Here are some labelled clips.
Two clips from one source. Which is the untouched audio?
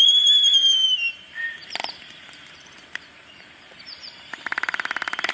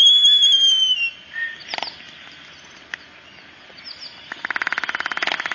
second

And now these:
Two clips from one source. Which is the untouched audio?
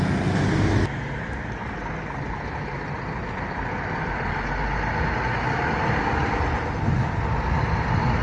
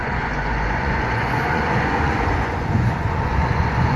first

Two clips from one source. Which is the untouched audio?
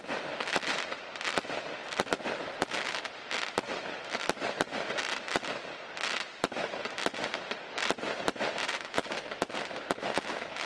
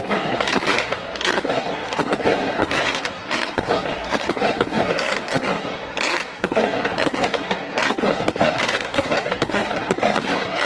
first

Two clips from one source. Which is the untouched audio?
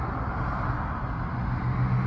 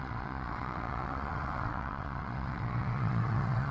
first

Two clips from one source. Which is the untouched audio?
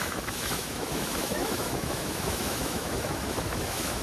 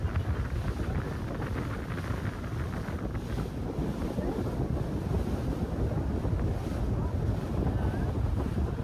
second